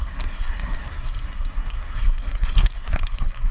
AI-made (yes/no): yes